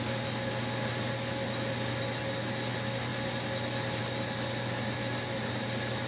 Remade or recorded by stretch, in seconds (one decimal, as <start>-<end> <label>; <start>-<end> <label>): 0.0-6.1 recorded